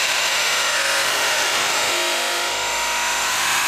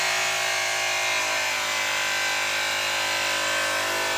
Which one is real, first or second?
second